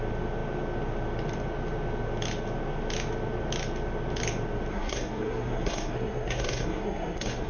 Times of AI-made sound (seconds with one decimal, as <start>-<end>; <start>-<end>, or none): 4.7-7.5